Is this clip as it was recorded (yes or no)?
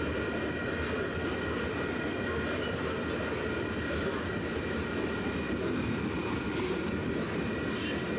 yes